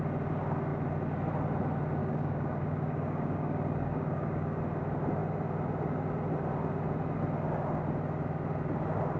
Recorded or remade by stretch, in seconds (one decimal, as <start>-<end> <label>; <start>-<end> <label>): 0.0-2.0 recorded; 2.0-4.6 remade; 4.6-9.2 recorded